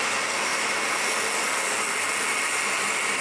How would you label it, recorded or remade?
recorded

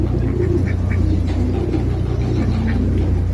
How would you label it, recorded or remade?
recorded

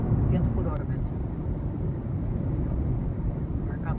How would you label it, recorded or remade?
recorded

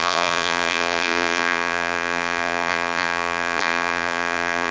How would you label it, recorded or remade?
remade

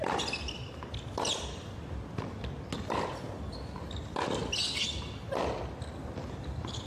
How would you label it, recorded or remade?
recorded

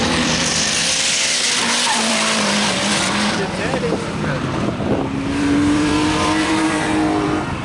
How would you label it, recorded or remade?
remade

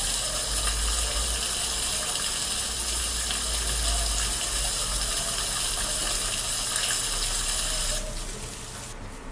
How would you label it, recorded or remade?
recorded